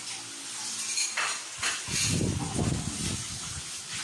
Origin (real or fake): real